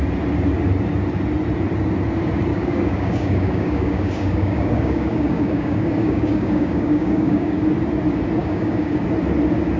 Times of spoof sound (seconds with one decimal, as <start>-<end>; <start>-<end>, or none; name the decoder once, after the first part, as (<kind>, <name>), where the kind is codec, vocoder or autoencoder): 2.5-7.6 (codec, DAC); 8.4-9.0